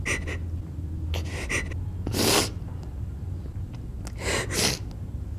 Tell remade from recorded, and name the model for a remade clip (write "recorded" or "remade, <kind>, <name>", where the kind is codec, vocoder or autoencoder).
recorded